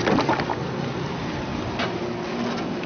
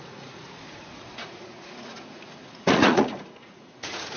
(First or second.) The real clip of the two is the first